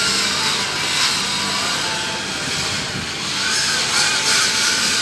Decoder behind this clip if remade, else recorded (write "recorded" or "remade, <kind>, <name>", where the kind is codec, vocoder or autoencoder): recorded